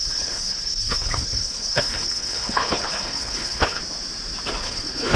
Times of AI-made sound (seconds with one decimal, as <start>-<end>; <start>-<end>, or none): 0.0-3.8; 4.6-5.2

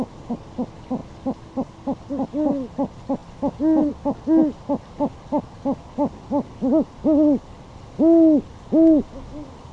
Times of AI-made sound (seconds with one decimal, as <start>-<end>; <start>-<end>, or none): none